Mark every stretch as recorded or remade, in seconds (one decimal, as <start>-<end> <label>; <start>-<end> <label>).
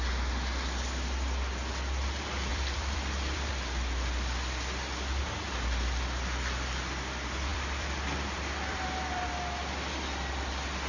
0.0-2.5 recorded; 2.5-3.5 remade; 3.5-7.5 recorded; 7.5-9.3 remade; 9.3-10.9 recorded